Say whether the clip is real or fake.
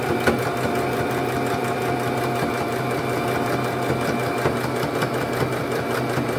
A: real